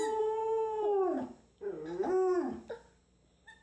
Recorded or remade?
recorded